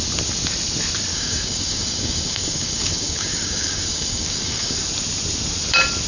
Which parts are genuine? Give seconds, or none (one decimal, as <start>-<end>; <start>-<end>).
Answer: 0.0-1.1; 4.8-6.1